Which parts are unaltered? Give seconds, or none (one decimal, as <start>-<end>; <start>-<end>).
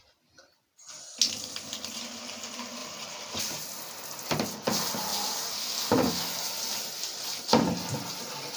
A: 0.0-2.8; 3.4-5.1; 6.4-8.6